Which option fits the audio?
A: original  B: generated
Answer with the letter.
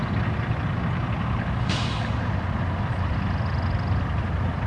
A